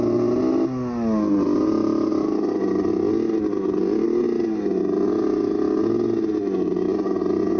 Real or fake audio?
real